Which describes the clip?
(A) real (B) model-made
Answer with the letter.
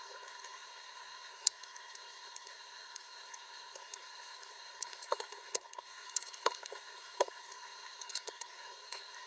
B